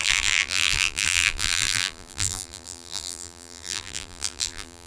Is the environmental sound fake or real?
fake